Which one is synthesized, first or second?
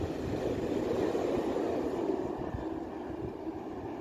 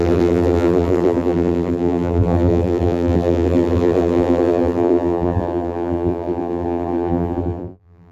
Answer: second